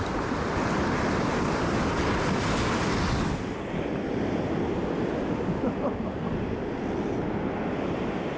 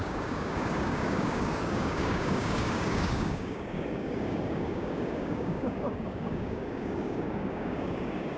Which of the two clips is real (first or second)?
first